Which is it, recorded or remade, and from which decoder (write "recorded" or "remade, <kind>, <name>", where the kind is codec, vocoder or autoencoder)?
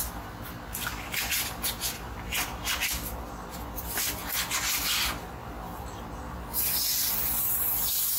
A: recorded